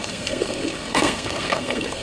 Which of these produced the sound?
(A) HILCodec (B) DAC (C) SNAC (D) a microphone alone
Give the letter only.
C